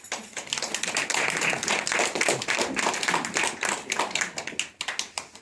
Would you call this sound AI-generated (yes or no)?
no